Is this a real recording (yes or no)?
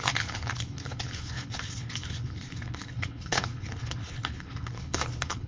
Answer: no